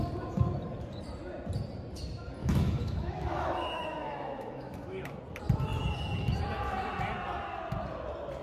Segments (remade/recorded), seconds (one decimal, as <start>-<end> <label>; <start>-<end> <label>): 0.0-2.4 recorded; 2.4-5.2 remade; 5.2-8.4 recorded